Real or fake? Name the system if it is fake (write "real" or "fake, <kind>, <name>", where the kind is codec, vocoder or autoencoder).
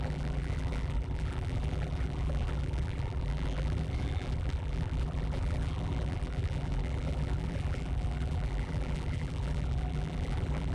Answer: fake, vocoder, BigVGAN v2